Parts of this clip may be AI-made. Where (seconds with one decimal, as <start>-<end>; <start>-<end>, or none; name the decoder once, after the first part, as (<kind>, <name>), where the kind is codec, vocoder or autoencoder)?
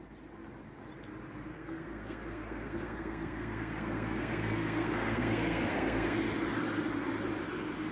1.5-6.2 (codec, SNAC)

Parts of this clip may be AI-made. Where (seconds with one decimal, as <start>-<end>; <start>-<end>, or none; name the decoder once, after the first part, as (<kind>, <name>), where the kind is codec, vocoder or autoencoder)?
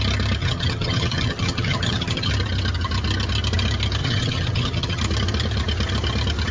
0.4-2.3 (vocoder, HiFi-GAN); 4.0-5.0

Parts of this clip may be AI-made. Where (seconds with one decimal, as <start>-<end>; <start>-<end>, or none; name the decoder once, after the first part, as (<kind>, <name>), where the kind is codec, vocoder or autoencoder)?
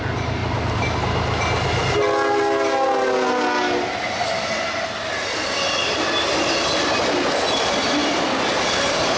none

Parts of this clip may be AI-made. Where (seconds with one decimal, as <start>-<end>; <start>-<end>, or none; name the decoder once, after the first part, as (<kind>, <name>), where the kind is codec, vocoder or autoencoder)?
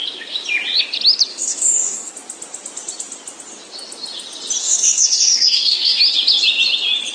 1.3-2.1 (codec, DAC); 4.6-6.0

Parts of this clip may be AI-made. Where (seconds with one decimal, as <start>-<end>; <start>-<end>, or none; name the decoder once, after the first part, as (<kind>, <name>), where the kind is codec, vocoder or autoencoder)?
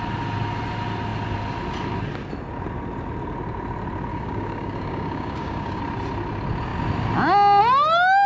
4.1-5.8 (codec, DAC)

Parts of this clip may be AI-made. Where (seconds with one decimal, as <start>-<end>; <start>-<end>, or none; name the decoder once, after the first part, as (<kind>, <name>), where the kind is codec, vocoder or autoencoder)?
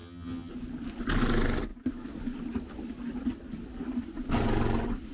0.0-0.5 (vocoder, HiFi-GAN)